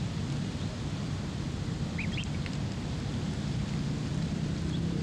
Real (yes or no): no